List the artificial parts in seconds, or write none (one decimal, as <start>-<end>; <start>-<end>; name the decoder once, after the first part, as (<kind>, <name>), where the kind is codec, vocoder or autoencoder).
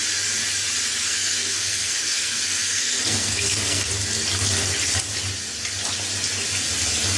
0.9-3.9 (codec, SNAC)